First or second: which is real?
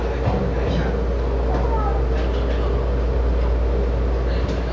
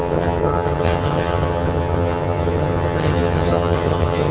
first